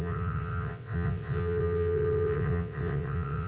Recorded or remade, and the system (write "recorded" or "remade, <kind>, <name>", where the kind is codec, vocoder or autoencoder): remade, vocoder, WaveNeXt